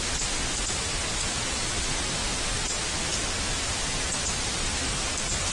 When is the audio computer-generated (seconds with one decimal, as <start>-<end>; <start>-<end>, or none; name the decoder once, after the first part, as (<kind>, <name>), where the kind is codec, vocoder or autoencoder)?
0.0-2.2 (vocoder, BigVGAN v2); 4.1-5.5